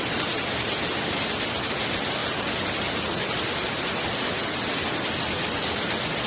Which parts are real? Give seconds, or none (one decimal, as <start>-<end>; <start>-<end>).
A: 0.0-6.3